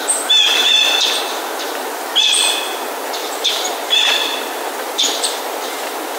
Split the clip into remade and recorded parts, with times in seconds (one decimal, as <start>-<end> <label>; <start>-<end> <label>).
0.0-0.5 recorded; 0.5-2.3 remade; 2.3-3.2 recorded; 3.2-6.2 remade

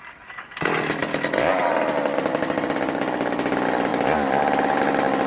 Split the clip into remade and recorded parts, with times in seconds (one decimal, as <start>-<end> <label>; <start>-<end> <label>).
0.0-5.3 recorded

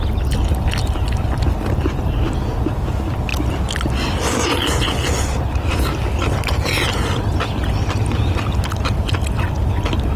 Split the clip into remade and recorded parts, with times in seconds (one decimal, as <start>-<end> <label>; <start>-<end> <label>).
0.0-10.2 recorded

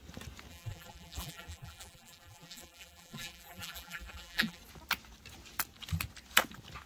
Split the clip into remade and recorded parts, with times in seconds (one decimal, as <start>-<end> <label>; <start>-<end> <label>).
0.0-0.5 recorded; 0.5-4.6 remade; 4.6-6.9 recorded